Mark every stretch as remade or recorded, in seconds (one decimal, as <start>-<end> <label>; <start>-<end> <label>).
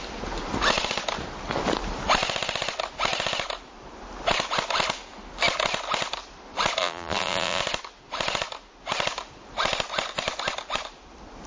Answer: 0.0-6.8 recorded; 6.8-7.6 remade; 7.6-11.5 recorded